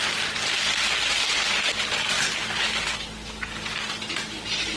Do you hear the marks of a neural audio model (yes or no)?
no